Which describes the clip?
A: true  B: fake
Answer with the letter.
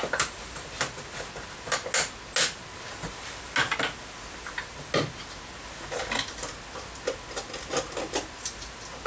A